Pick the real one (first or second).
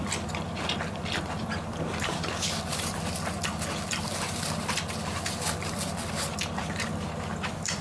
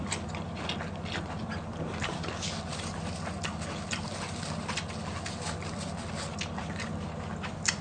second